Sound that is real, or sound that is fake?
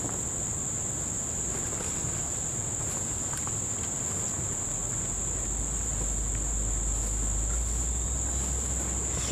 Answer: real